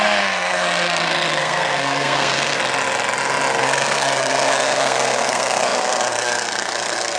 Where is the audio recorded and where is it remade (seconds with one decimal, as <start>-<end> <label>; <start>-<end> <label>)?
0.0-2.6 remade; 2.6-3.6 recorded; 3.6-7.2 remade